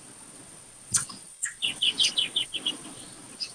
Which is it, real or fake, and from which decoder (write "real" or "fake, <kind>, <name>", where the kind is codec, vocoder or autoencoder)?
fake, vocoder, Vocos